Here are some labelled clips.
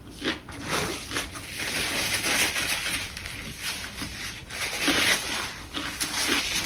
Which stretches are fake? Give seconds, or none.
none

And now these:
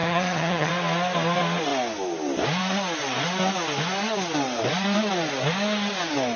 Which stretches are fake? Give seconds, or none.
0.0-0.7 (vocoder, HiFi-GAN)

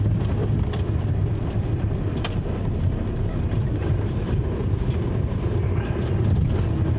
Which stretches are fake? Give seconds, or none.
0.4-4.6 (vocoder, BigVGAN v2)